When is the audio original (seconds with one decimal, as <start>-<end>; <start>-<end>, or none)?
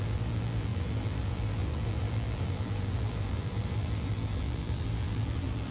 none